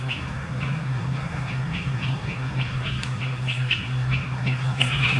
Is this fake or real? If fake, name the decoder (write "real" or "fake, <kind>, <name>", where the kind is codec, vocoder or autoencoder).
fake, codec, SNAC